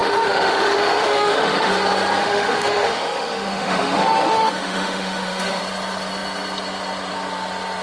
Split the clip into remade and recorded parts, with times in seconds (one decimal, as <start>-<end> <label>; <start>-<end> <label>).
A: 0.0-1.7 remade; 1.7-2.2 recorded; 2.2-5.6 remade; 5.6-7.8 recorded